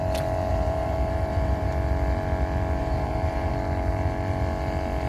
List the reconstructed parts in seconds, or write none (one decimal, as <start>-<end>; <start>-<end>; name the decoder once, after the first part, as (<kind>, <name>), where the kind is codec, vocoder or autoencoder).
0.5-1.7 (vocoder, BigVGAN v2); 2.8-3.5